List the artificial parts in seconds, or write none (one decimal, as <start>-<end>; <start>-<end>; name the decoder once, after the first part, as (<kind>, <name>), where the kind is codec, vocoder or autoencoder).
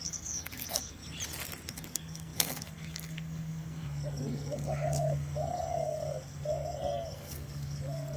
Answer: 0.0-1.0 (codec, SNAC); 1.7-8.2